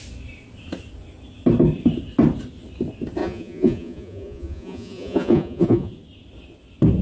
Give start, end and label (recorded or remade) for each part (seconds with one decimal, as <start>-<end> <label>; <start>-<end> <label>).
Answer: 0.0-3.2 recorded; 3.2-5.9 remade; 5.9-7.0 recorded